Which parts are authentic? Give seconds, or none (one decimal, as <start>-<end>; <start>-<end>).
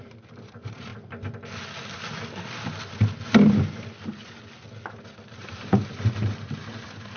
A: 0.9-5.0